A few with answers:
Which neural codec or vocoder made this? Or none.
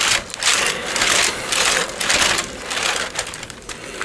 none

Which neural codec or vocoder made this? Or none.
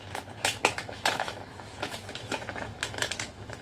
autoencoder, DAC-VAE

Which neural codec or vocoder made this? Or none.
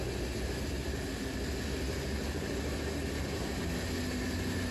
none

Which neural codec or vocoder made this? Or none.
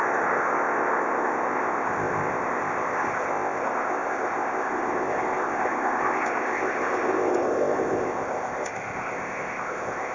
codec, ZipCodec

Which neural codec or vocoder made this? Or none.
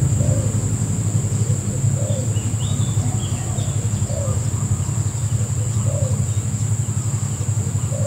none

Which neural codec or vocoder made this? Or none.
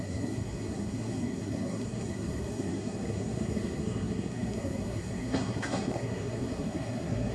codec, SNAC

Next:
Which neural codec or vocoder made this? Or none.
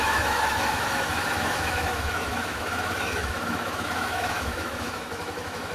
autoencoder, DAC-VAE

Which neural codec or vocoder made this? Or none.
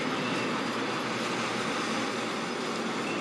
none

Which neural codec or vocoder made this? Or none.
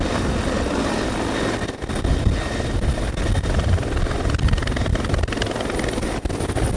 none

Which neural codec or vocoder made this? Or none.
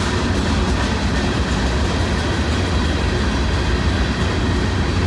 none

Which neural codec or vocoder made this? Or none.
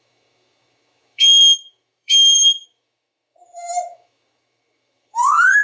autoencoder, DAC-VAE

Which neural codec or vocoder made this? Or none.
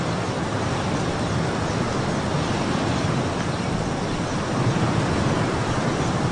none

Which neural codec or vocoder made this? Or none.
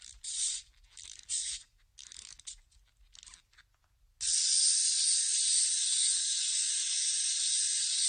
none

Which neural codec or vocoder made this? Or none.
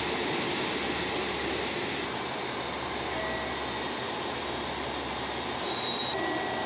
none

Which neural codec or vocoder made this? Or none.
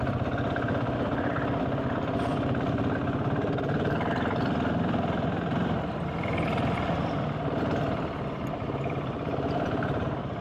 vocoder, BigVGAN v2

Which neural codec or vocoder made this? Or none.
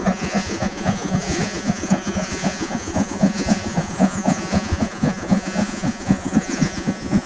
vocoder, Vocos